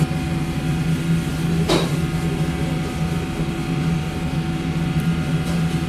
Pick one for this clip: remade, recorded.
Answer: recorded